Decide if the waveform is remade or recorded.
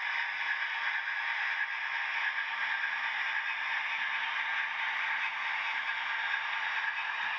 recorded